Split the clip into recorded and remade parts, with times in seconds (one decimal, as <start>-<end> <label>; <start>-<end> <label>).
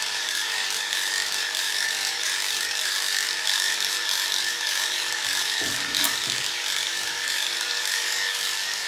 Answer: 0.0-8.9 remade